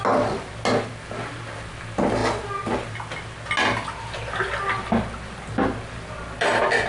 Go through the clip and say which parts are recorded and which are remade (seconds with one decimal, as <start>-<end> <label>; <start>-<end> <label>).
0.0-6.9 recorded